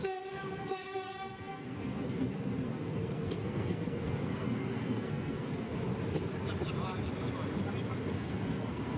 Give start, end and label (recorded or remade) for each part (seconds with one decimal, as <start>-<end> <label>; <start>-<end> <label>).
0.0-5.7 remade; 5.7-8.1 recorded; 8.1-9.0 remade